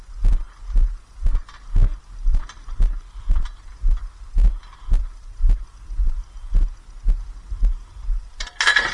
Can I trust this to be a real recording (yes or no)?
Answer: yes